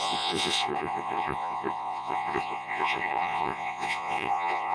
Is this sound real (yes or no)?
no